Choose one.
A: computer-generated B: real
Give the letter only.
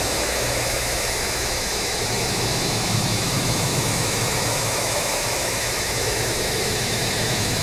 A